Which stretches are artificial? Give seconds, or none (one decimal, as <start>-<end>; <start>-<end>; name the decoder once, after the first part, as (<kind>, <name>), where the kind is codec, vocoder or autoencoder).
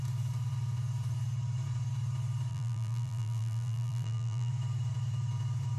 2.5-4.5 (vocoder, BigVGAN v2)